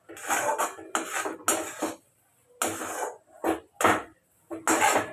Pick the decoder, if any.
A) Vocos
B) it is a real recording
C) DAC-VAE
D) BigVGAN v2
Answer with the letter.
B